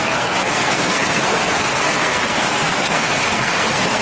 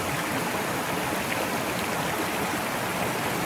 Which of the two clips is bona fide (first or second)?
second